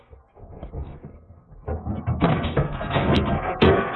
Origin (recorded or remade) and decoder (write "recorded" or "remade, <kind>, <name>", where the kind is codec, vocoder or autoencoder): remade, codec, SNAC